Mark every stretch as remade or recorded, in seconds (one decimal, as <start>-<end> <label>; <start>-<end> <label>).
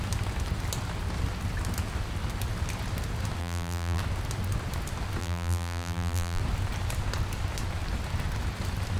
0.0-3.4 recorded; 3.4-4.0 remade; 4.0-5.2 recorded; 5.2-6.4 remade; 6.4-9.0 recorded